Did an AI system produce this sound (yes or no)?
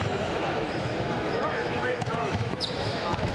yes